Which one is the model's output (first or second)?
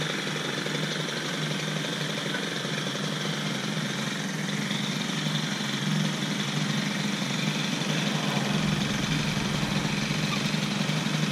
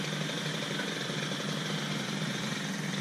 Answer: second